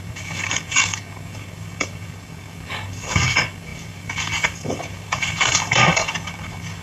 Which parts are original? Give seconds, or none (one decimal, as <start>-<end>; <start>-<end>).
none